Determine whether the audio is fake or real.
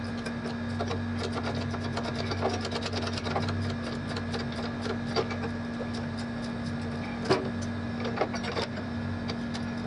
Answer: real